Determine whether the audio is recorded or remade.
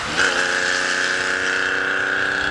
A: recorded